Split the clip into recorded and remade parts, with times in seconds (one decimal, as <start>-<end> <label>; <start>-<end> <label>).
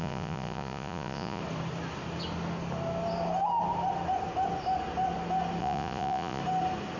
0.0-1.4 remade; 1.4-5.6 recorded; 5.6-6.4 remade; 6.4-7.0 recorded